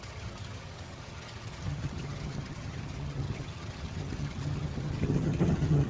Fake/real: fake